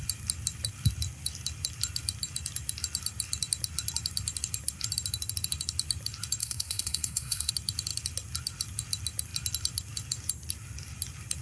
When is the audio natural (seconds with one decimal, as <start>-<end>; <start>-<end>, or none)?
0.0-6.4; 7.5-11.4